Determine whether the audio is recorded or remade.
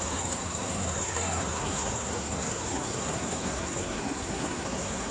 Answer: remade